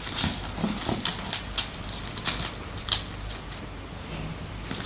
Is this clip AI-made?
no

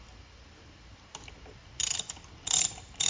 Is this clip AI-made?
no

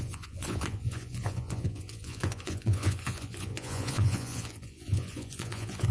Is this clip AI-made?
yes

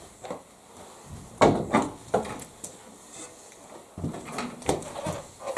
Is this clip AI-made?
no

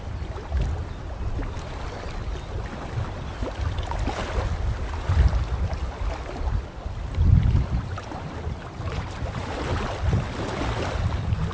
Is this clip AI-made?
no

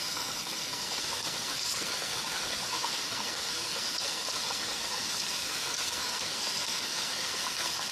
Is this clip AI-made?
yes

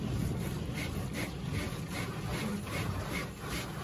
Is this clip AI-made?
no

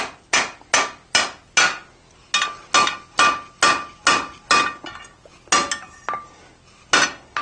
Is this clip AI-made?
no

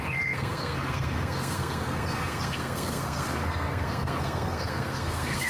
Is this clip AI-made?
yes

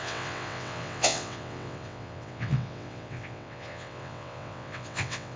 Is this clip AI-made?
yes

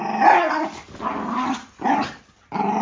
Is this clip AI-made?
no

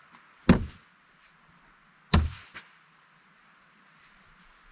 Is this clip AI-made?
no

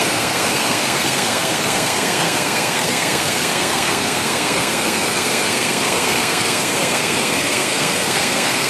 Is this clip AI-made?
yes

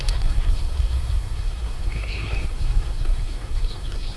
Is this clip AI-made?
yes